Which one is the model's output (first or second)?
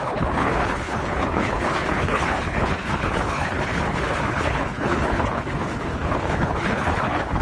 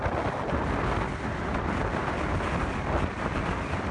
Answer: first